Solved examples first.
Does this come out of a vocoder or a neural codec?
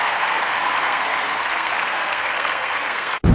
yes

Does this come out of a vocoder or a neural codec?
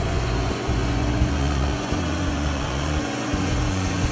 yes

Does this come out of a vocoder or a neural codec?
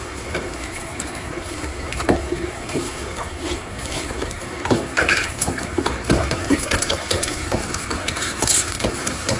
yes